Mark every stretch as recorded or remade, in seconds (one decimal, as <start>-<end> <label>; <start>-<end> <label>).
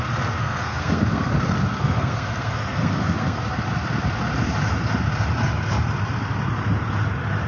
0.0-0.4 recorded; 0.4-3.4 remade; 3.4-7.5 recorded